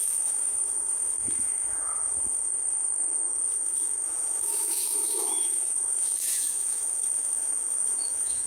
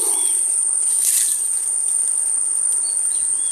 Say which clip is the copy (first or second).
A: first